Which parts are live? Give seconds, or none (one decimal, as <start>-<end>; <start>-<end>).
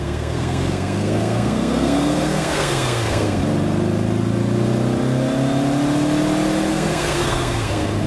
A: 3.4-6.7